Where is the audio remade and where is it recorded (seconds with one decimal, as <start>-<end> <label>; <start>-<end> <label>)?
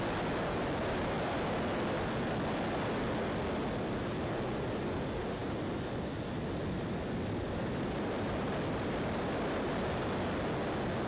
0.0-11.1 recorded